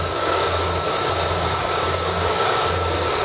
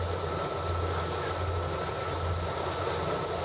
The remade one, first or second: first